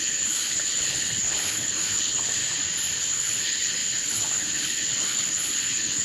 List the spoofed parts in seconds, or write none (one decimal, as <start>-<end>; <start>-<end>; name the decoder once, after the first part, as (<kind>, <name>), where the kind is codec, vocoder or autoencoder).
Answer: 0.0-2.4 (codec, HILCodec); 3.0-6.0